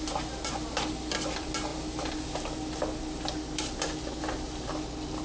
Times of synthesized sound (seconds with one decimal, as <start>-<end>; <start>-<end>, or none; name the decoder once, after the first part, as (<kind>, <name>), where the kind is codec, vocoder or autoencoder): none